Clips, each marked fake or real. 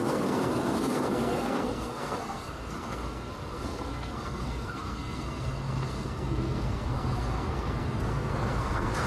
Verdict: fake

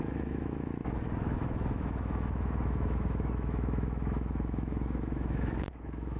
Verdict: fake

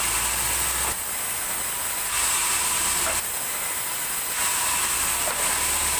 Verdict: real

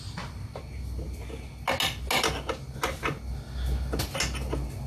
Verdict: real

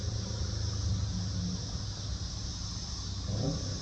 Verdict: real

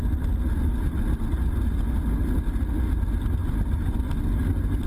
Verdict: real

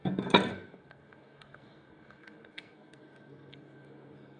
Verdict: fake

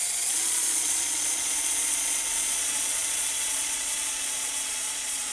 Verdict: fake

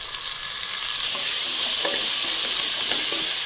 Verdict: real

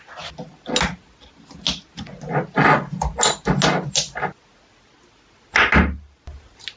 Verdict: real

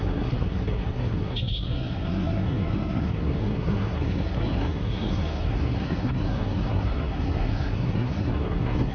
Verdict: fake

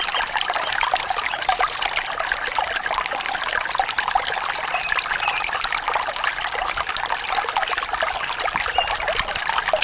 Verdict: real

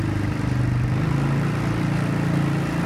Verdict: real